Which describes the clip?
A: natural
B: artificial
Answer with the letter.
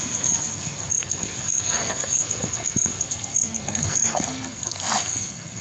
B